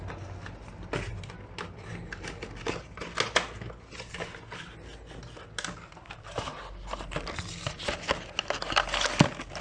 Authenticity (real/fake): real